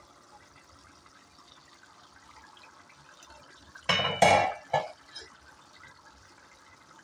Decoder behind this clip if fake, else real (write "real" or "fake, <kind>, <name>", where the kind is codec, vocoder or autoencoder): real